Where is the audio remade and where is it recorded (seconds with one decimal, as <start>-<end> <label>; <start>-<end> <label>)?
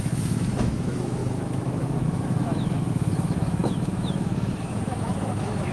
0.0-5.7 remade